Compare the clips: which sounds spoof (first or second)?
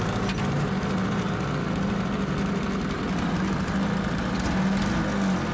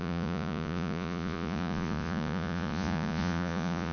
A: second